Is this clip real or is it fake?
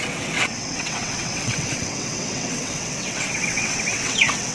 fake